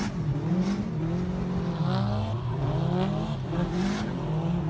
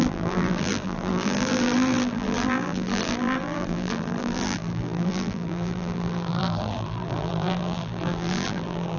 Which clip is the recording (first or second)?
first